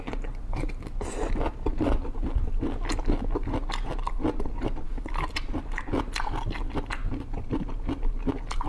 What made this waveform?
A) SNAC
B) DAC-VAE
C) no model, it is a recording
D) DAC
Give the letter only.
C